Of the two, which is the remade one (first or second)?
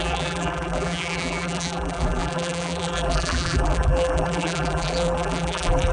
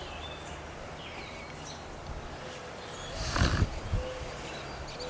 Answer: first